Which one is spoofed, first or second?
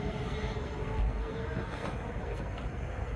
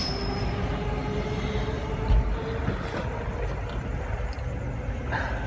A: first